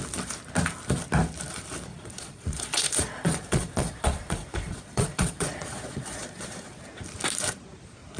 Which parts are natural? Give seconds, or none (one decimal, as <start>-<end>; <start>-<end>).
0.0-1.9; 6.8-8.2